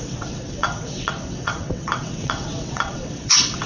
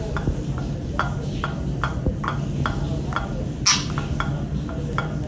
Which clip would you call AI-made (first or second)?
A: first